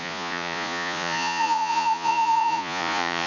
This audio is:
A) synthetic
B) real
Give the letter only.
A